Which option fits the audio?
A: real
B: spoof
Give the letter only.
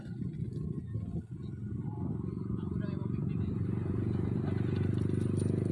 A